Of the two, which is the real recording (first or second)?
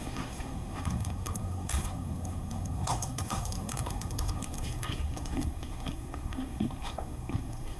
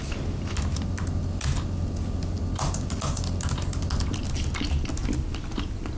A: second